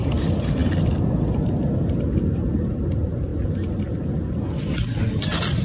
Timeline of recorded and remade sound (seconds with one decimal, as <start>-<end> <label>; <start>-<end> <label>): 0.0-5.6 recorded

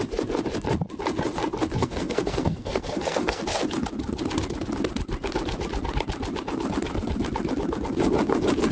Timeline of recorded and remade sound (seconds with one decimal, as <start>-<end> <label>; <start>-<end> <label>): 0.0-1.8 recorded; 1.8-3.4 remade; 3.4-8.7 recorded

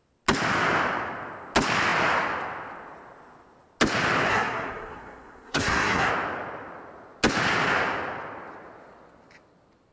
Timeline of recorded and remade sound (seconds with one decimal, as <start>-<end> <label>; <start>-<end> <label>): 0.0-4.3 recorded; 4.3-6.1 remade; 6.1-9.9 recorded

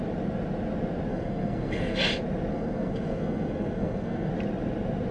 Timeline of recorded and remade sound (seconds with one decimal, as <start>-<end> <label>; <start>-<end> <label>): 0.0-1.1 recorded; 1.1-2.0 remade; 2.0-2.5 recorded; 2.5-4.3 remade; 4.3-5.1 recorded